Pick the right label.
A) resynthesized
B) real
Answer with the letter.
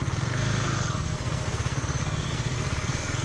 A